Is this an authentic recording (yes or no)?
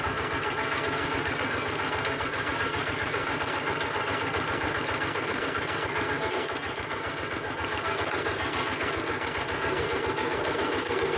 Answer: no